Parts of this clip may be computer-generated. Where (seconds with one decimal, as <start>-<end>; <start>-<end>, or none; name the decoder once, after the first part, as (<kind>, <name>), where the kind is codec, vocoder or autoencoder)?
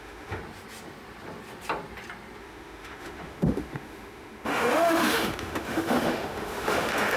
0.0-0.4 (autoencoder, DAC-VAE); 2.4-7.2